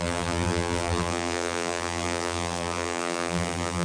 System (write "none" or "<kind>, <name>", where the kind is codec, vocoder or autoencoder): vocoder, BigVGAN v2